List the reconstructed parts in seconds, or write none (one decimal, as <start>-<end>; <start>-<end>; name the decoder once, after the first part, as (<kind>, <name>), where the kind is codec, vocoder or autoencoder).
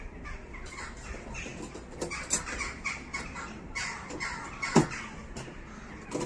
none